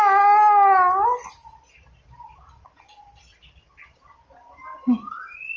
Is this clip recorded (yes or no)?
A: yes